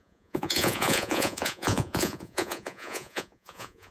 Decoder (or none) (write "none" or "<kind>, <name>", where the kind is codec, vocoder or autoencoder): vocoder, Vocos